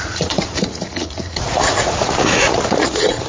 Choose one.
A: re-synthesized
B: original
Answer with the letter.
A